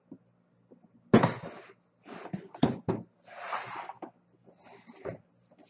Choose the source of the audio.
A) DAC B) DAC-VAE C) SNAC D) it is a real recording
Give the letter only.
D